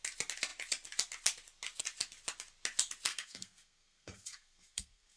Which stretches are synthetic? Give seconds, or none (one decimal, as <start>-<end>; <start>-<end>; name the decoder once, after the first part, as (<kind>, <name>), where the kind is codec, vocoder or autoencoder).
3.1-5.2 (codec, SNAC)